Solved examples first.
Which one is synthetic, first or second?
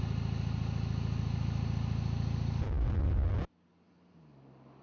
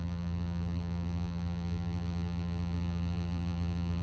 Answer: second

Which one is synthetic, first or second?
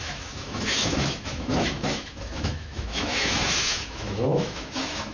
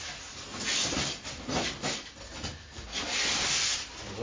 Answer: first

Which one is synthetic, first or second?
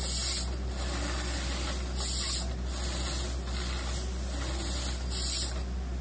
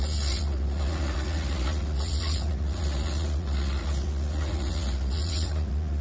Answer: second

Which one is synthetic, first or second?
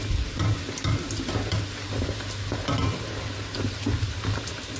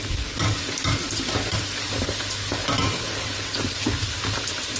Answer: second